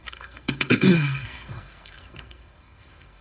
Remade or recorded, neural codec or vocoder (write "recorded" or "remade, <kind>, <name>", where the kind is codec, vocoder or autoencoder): remade, codec, SNAC